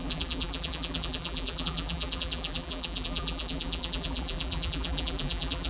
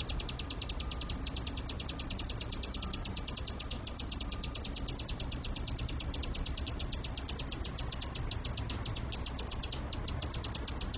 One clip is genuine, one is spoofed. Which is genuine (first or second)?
second